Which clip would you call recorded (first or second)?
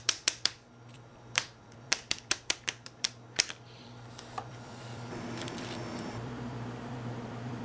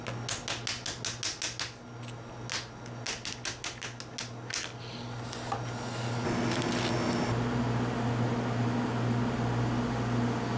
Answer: second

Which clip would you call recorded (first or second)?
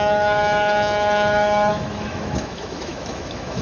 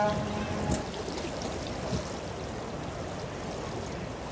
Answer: second